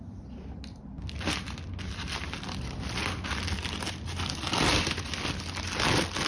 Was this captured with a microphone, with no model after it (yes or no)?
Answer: yes